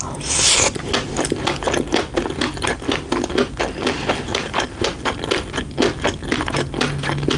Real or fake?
real